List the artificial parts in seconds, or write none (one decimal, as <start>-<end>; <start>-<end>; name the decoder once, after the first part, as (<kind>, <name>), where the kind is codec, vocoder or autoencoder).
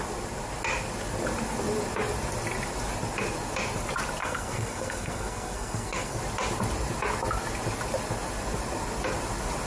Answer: 4.2-6.2 (codec, SNAC)